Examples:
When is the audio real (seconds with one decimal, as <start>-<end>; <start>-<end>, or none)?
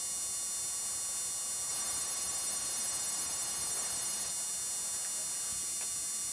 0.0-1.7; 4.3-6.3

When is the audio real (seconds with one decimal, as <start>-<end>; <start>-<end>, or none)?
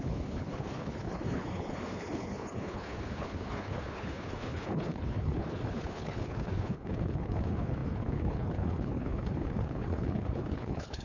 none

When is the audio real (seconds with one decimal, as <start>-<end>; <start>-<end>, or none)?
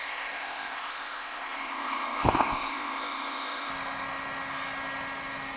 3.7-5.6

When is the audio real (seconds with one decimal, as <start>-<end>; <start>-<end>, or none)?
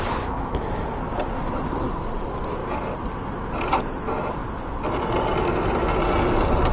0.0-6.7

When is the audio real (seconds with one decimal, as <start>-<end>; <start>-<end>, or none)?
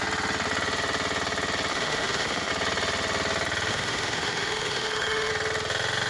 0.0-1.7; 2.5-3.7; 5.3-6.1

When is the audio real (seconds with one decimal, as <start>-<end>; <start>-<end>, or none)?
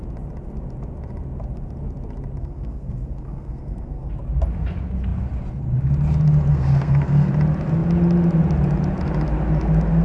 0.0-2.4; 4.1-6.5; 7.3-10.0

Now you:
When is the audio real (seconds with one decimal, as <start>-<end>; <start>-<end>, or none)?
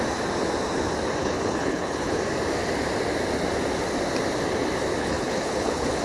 0.0-1.2; 2.2-5.0